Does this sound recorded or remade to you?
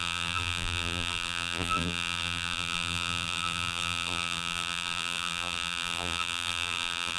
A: remade